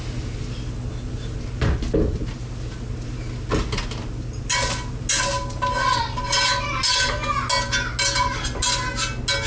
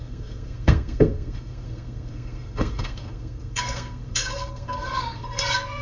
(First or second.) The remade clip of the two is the second